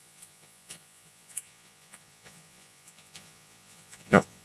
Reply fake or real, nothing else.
fake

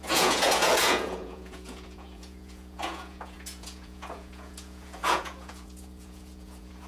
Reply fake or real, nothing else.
fake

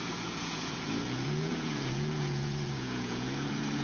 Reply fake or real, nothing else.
fake